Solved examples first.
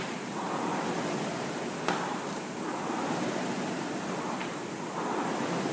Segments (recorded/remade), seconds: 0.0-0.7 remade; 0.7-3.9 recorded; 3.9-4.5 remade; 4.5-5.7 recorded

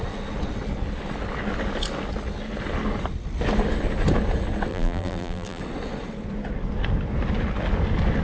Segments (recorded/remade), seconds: 0.0-4.7 recorded; 4.7-5.6 remade; 5.6-8.2 recorded

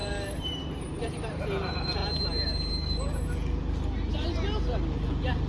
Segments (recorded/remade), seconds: 0.0-1.0 remade; 1.0-5.5 recorded

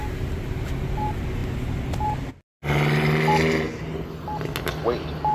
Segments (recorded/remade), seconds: 0.0-5.3 recorded

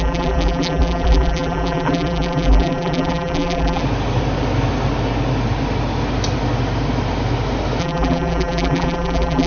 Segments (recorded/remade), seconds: 0.0-3.8 remade; 3.8-7.8 recorded; 7.8-9.5 remade

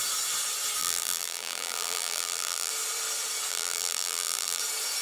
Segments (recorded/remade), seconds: 0.0-0.8 recorded; 0.8-2.7 remade; 2.7-3.5 recorded; 3.5-4.6 remade; 4.6-5.0 recorded